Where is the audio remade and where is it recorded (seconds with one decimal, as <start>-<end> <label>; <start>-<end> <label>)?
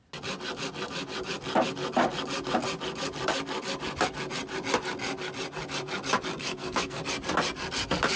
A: 0.0-6.4 recorded; 6.4-7.0 remade; 7.0-8.2 recorded